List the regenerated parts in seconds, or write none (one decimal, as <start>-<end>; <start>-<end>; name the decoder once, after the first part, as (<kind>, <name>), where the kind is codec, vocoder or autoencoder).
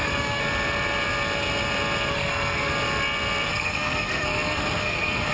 0.0-0.4 (codec, SNAC); 2.1-2.7; 3.5-5.3